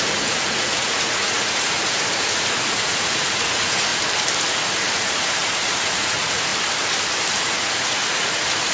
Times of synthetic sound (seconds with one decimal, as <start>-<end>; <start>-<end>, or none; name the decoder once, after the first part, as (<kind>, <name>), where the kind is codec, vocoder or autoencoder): 0.0-3.9 (vocoder, Vocos); 4.4-6.5; 7.4-8.7